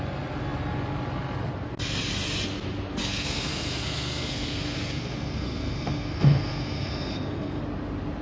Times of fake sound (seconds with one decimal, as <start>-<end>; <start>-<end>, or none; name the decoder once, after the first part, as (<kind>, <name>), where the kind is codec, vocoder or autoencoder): 3.0-7.6 (codec, SNAC)